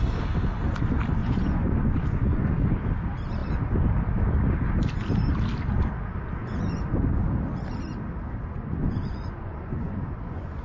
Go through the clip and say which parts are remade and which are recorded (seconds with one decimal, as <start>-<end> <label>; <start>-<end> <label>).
0.0-1.2 recorded; 1.2-2.9 remade; 2.9-6.4 recorded; 6.4-6.9 remade; 6.9-8.5 recorded; 8.5-10.6 remade

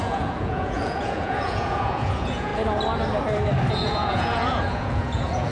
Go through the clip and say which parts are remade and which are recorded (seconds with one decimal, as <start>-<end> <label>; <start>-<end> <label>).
0.0-2.5 remade; 2.5-3.7 recorded; 3.7-5.5 remade

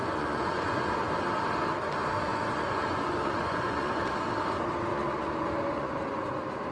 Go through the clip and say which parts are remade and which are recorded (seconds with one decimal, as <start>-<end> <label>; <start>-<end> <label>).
0.0-1.1 remade; 1.1-2.3 recorded; 2.3-4.1 remade; 4.1-4.9 recorded; 4.9-5.9 remade; 5.9-6.7 recorded